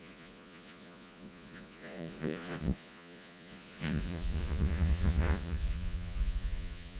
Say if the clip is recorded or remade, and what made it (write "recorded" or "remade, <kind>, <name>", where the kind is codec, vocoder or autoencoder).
remade, vocoder, Vocos